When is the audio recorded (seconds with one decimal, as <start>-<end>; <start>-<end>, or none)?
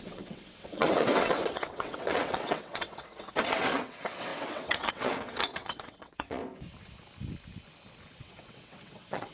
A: 6.4-8.2